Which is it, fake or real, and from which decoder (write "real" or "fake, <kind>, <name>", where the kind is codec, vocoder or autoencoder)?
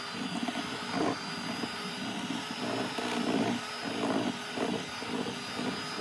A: real